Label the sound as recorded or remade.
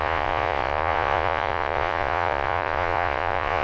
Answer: remade